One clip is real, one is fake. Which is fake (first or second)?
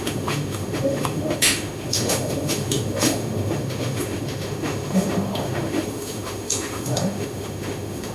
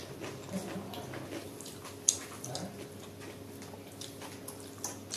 first